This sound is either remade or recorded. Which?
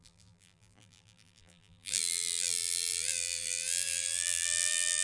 remade